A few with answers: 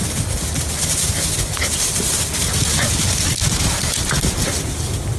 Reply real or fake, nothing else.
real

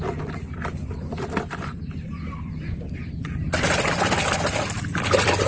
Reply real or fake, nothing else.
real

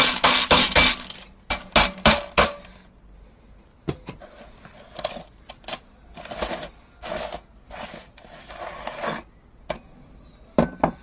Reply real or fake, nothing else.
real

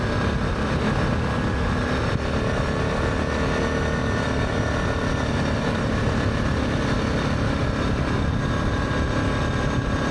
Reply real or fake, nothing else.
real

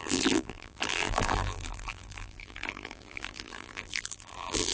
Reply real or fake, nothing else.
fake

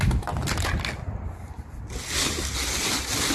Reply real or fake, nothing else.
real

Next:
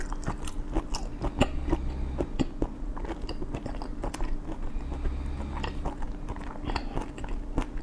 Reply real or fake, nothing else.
real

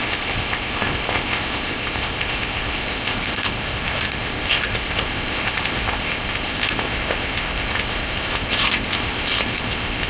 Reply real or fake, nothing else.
fake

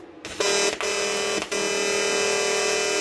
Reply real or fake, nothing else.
real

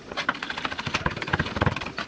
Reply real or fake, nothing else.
real